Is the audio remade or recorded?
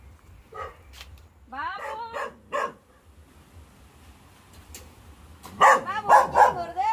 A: recorded